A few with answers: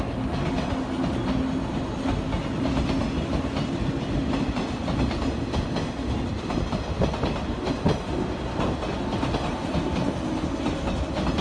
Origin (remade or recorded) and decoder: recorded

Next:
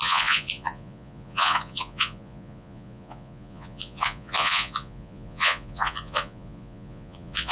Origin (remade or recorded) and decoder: remade, vocoder, Vocos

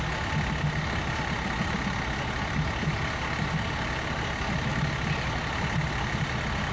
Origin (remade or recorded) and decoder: recorded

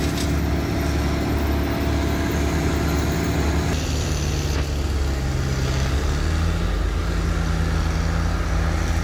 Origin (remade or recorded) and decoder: recorded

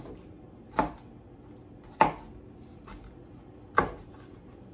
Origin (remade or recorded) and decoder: recorded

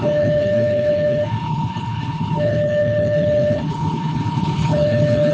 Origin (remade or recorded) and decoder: remade, codec, HILCodec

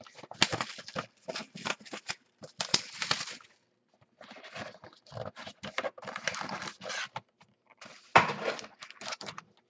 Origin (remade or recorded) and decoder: recorded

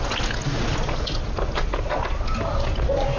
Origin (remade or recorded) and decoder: recorded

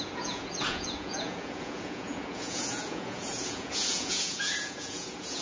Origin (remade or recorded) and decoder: remade, vocoder, Vocos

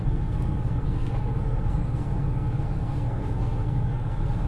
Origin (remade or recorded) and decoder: remade, codec, SNAC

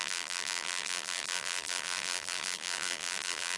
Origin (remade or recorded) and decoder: remade, vocoder, BigVGAN v2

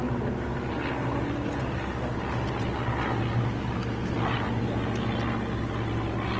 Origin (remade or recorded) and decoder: recorded